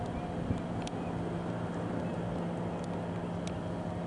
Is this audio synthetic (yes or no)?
no